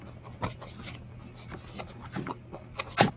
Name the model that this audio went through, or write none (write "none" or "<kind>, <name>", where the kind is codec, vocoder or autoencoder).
none